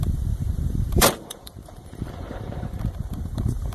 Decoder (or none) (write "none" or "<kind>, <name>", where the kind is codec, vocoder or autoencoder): vocoder, BigVGAN v2